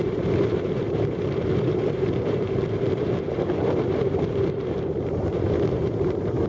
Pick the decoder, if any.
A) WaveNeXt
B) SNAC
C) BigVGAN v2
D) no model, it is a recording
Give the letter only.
C